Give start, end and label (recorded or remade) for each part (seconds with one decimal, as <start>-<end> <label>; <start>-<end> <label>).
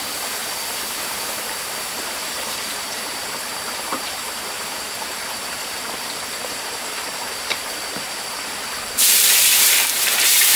0.0-0.4 remade; 0.4-1.2 recorded; 1.2-10.6 remade